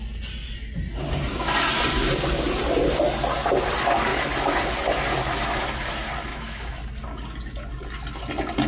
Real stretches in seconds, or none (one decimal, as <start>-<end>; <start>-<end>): 0.0-6.3; 6.9-8.7